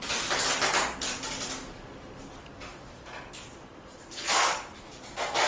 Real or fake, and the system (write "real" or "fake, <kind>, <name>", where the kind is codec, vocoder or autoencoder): fake, vocoder, BigVGAN v2